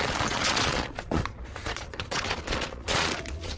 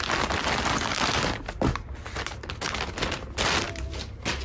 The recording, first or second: second